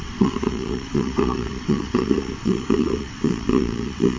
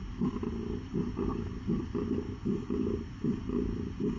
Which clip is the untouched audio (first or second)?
second